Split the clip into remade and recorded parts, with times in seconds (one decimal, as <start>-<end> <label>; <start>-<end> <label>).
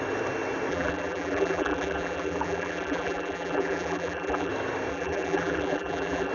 0.0-0.7 recorded; 0.7-4.5 remade; 4.5-4.9 recorded; 4.9-6.3 remade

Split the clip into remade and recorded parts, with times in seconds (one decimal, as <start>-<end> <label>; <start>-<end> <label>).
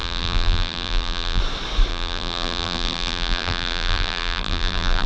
0.0-1.4 remade; 1.4-1.9 recorded; 1.9-5.1 remade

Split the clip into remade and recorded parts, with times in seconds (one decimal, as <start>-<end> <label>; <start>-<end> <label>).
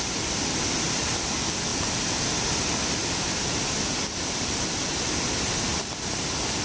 0.0-1.7 recorded; 1.7-2.4 remade; 2.4-6.6 recorded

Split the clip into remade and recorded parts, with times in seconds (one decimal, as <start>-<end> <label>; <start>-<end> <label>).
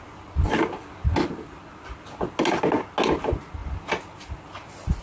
0.0-5.0 recorded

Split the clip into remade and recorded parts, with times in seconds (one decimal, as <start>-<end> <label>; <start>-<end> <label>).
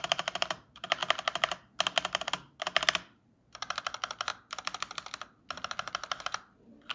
0.0-1.0 remade; 1.0-3.7 recorded; 3.7-4.3 remade; 4.3-5.7 recorded; 5.7-6.9 remade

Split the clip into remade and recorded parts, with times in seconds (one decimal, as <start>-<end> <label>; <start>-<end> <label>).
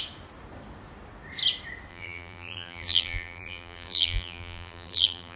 0.0-1.9 recorded; 1.9-5.4 remade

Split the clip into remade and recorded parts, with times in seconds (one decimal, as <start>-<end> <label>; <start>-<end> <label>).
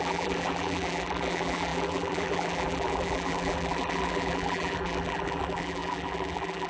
0.0-6.7 remade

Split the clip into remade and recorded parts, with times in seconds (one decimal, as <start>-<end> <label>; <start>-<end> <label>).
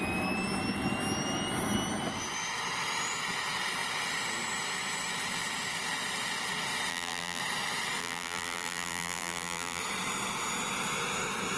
0.0-6.9 recorded; 6.9-7.4 remade; 7.4-8.0 recorded; 8.0-9.8 remade; 9.8-11.6 recorded